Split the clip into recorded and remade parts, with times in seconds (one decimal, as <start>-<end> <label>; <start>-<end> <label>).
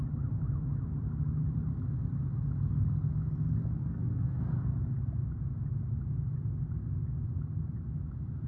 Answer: 0.0-3.8 recorded; 3.8-4.4 remade; 4.4-8.5 recorded